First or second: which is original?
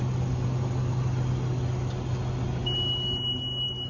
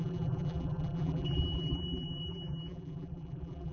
first